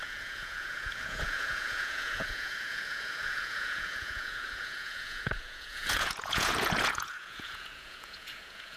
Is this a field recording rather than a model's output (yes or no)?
no